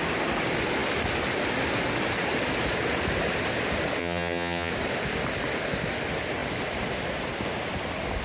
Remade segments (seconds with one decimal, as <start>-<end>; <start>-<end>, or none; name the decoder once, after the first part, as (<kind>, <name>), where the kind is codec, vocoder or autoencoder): 4.0-4.7 (vocoder, HiFi-GAN)